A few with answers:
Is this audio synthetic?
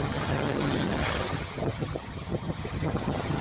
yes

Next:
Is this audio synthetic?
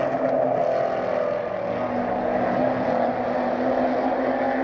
no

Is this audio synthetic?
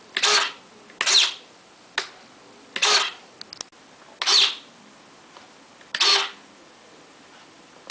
no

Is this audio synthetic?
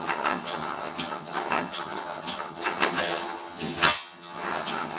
yes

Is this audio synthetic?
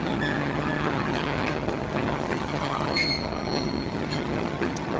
yes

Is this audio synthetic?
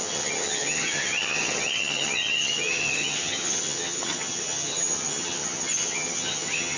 yes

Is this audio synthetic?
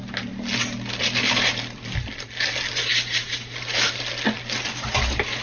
no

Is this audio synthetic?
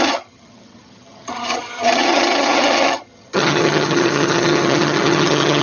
yes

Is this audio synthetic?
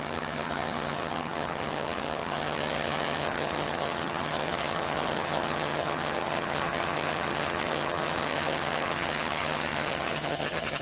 yes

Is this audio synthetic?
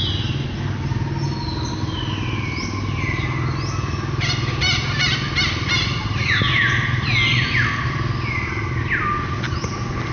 no